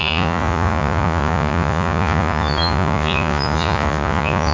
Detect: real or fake fake